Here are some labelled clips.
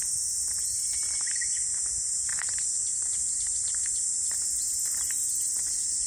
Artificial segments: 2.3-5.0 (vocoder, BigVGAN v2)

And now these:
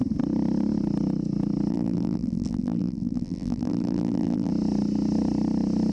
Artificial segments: 1.7-4.5 (vocoder, BigVGAN v2)

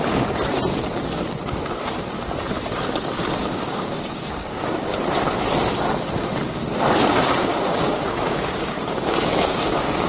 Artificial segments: 3.4-4.7 (codec, DAC); 7.5-10.1

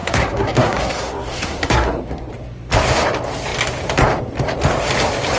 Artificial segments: 0.0-2.3 (codec, SNAC)

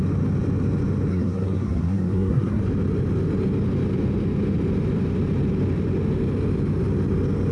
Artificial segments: 1.1-2.6 (codec, SNAC)

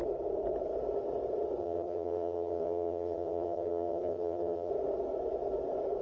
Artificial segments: 1.6-4.7 (vocoder, HiFi-GAN)